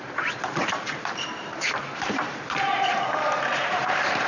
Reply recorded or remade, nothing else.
remade